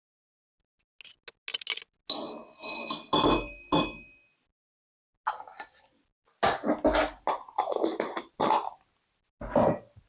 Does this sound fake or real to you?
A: real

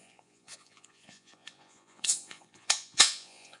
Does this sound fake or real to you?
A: fake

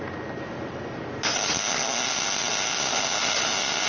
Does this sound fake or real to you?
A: real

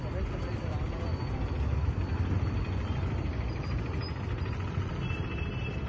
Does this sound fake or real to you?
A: real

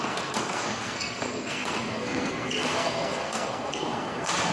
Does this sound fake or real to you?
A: fake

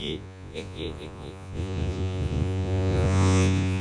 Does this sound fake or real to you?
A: fake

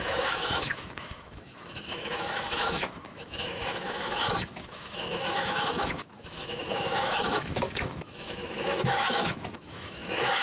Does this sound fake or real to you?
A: fake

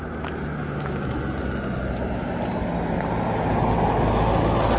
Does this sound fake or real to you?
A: real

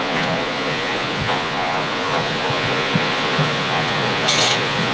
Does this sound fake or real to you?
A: fake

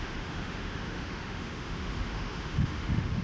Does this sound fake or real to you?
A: fake